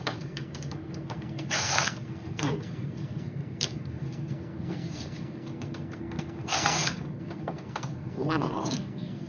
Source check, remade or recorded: remade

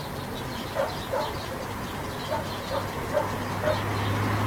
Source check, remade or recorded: recorded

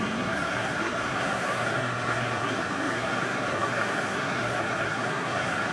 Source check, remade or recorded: remade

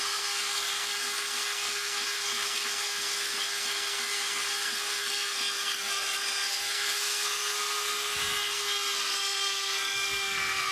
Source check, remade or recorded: remade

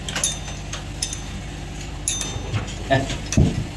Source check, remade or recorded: recorded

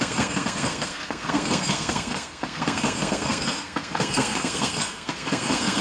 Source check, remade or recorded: remade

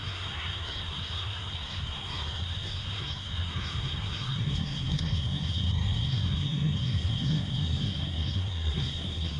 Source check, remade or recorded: remade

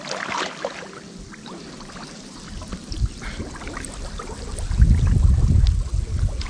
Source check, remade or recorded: recorded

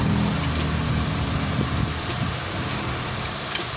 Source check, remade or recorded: recorded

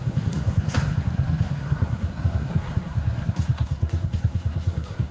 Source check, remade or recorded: remade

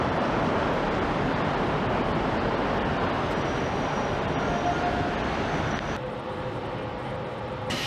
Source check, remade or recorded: recorded